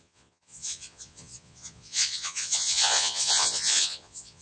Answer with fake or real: fake